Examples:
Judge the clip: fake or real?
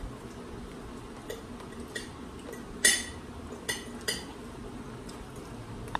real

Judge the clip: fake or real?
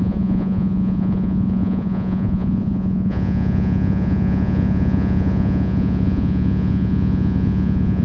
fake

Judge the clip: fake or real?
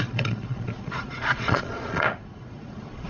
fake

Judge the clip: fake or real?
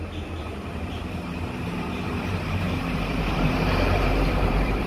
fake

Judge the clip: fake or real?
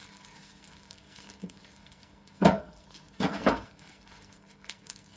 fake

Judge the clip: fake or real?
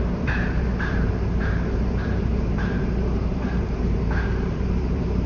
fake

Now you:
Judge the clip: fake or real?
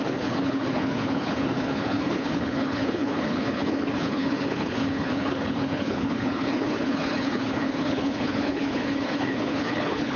fake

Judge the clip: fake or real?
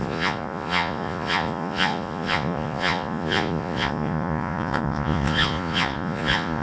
fake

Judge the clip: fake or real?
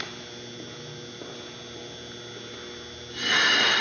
real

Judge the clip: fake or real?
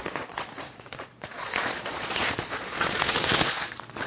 fake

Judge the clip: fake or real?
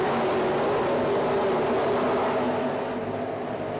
real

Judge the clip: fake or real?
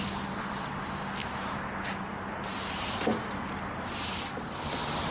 real